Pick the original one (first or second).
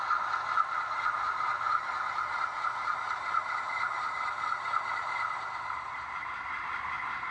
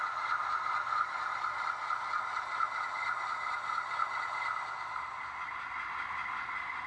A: second